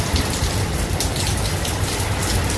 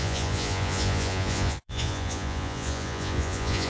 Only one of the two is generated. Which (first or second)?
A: second